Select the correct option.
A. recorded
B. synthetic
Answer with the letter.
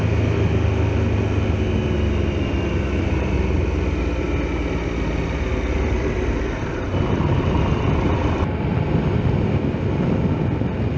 A